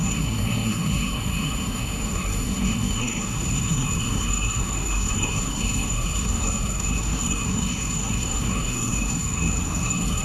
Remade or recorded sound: remade